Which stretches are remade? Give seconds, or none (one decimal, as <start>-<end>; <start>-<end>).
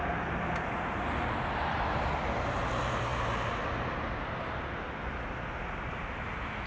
none